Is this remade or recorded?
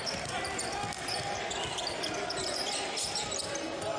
recorded